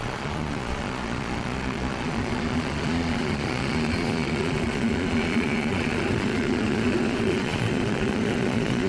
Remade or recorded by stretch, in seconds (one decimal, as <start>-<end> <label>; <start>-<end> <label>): 0.0-8.9 remade